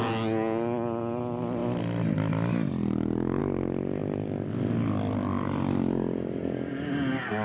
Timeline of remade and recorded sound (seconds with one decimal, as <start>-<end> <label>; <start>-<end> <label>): 0.0-7.4 recorded